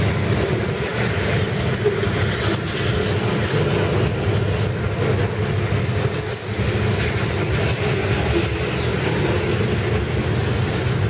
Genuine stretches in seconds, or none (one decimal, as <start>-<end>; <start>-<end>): 0.0-0.9; 2.2-11.1